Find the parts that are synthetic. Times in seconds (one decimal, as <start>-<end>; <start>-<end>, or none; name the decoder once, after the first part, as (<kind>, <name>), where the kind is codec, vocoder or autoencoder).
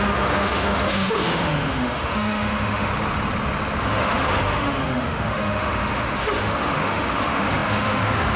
0.0-2.9 (autoencoder, DAC-VAE); 3.8-8.4